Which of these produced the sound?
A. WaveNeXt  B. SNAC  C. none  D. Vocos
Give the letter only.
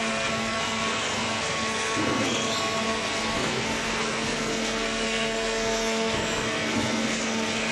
B